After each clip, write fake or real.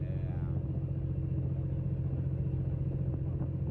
real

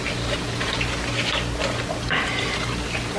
real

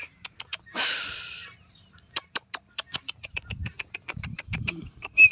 fake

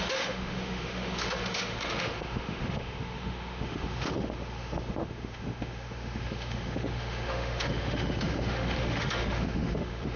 fake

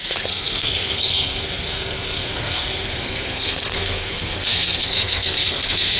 fake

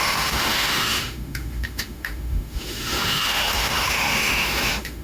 fake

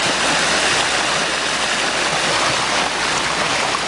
real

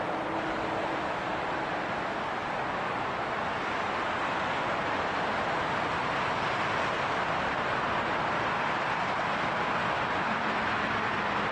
real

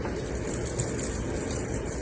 real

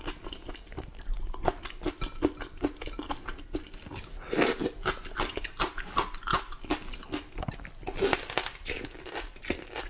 real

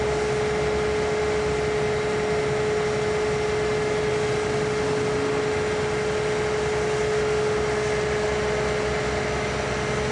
real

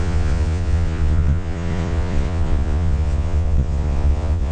fake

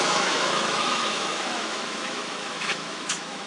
fake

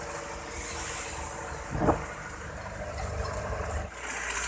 real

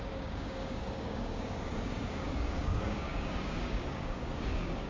fake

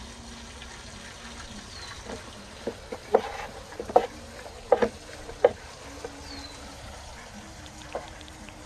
real